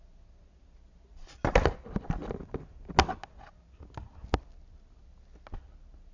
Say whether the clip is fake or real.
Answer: real